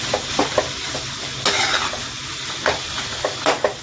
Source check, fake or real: real